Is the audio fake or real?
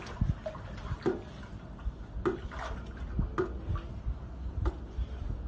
real